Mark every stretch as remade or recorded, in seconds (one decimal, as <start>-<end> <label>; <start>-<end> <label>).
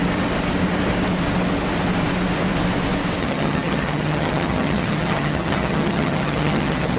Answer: 0.0-3.2 recorded; 3.2-7.0 remade